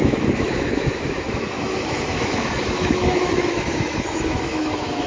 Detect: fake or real fake